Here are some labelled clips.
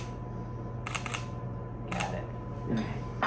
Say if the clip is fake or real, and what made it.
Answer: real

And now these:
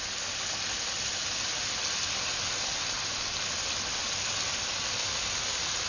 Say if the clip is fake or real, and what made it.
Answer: real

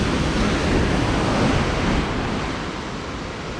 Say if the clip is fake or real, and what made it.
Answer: real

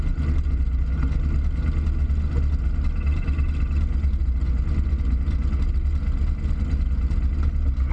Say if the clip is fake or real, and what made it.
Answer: real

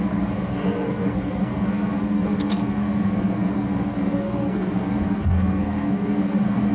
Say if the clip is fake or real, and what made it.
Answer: fake, codec, SNAC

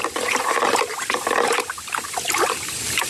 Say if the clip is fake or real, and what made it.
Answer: real